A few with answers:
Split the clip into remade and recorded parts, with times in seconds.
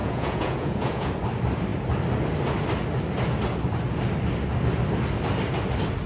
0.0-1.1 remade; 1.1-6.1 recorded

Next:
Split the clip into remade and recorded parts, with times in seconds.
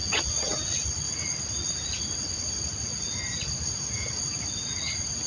0.0-5.3 recorded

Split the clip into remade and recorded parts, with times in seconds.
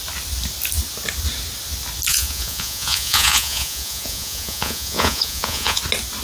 0.0-2.1 recorded; 2.1-5.8 remade; 5.8-6.2 recorded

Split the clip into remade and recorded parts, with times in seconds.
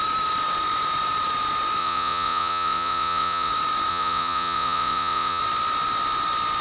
0.0-1.8 recorded; 1.8-3.5 remade; 3.5-3.9 recorded; 3.9-5.4 remade; 5.4-6.6 recorded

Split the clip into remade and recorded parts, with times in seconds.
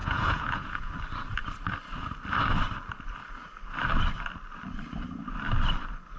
0.0-0.9 remade; 0.9-6.2 recorded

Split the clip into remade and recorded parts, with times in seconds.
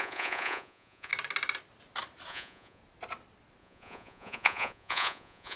0.0-1.1 remade; 1.1-2.3 recorded; 2.3-2.8 remade; 2.8-3.6 recorded; 3.6-5.6 remade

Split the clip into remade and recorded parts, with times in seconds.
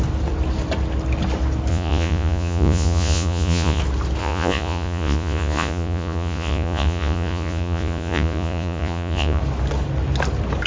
0.0-1.7 recorded; 1.7-3.8 remade; 3.8-4.2 recorded; 4.2-9.4 remade; 9.4-10.7 recorded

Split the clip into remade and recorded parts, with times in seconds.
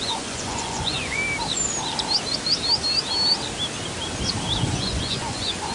0.0-1.2 remade; 1.2-4.6 recorded; 4.6-5.7 remade